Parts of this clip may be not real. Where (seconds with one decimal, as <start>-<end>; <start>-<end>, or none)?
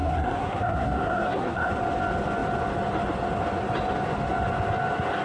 0.0-1.7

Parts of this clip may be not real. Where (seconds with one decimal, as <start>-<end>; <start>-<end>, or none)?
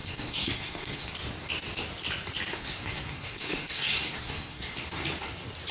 0.0-1.1; 2.5-4.7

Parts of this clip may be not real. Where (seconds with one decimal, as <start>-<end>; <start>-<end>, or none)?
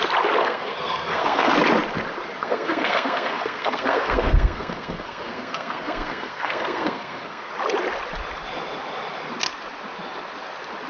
0.4-1.5; 2.4-7.5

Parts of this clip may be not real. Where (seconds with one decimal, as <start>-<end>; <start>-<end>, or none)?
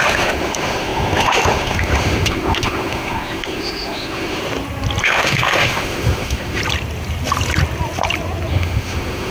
0.0-4.4; 5.0-6.6; 8.5-9.3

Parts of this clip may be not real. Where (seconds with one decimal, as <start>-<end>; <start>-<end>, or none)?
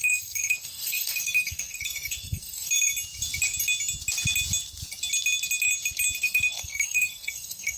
0.0-2.9; 6.2-7.8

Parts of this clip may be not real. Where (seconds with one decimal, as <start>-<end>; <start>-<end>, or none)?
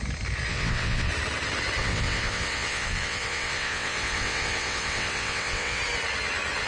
0.5-1.1; 1.8-5.8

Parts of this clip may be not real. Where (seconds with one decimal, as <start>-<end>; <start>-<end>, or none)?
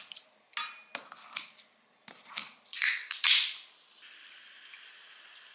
0.0-0.5; 1.7-5.5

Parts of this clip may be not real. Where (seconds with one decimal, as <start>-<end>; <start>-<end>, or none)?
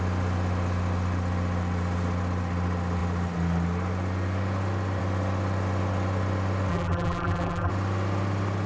6.7-7.7